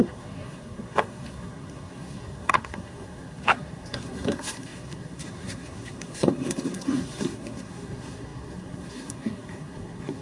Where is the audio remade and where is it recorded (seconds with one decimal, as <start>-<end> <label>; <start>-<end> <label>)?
0.0-10.2 remade